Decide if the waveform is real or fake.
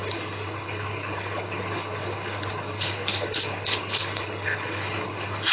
fake